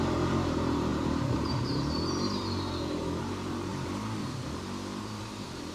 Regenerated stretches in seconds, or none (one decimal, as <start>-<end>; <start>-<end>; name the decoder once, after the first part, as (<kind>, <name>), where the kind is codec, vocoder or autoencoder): 0.0-3.7 (vocoder, BigVGAN v2); 5.0-5.7